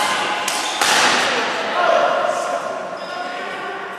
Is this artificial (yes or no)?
no